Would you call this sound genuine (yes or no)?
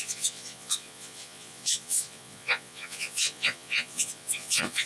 no